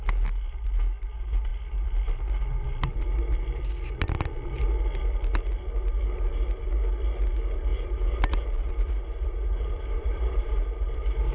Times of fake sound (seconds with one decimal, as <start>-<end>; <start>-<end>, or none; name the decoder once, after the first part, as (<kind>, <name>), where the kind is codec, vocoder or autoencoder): 7.7-11.3 (vocoder, BigVGAN v2)